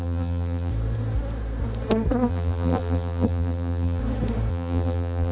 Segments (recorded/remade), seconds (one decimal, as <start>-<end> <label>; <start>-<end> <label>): 0.0-0.7 remade; 0.7-2.3 recorded; 2.3-4.0 remade; 4.0-4.5 recorded; 4.5-5.3 remade